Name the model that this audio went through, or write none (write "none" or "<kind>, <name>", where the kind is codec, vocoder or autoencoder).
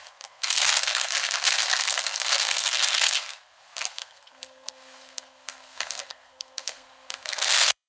codec, SNAC